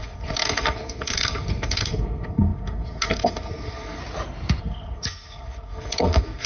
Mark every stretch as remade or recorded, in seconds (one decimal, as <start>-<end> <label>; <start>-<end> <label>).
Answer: 0.0-4.0 remade; 4.0-4.6 recorded; 4.6-6.5 remade